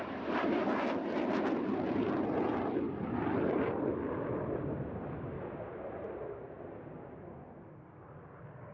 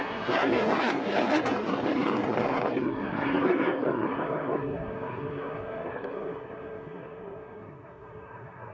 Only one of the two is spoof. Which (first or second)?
second